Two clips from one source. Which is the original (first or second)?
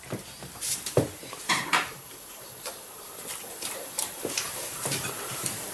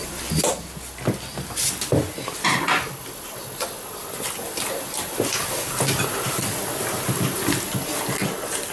second